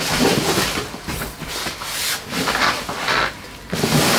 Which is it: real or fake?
real